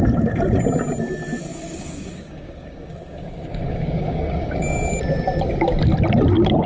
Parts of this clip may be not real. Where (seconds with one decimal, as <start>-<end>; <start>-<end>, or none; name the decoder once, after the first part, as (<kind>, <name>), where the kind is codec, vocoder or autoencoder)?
1.5-4.9 (codec, DAC)